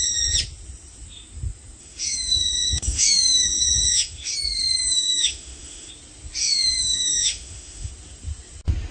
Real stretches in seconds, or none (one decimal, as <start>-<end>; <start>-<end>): 0.0-1.8; 4.3-4.8; 5.9-6.4; 7.9-8.9